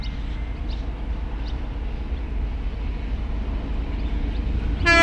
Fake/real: real